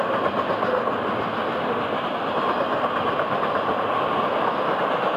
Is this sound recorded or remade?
recorded